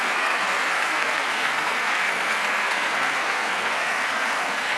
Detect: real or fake fake